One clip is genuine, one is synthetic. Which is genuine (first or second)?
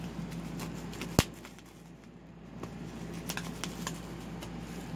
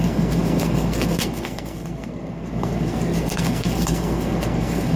first